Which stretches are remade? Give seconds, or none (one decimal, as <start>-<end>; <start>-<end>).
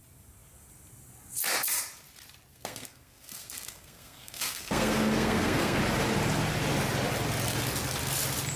2.5-5.8